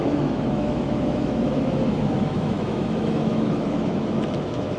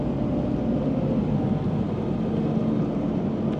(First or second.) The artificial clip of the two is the first